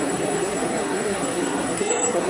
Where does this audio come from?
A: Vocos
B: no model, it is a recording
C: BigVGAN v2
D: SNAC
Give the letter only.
D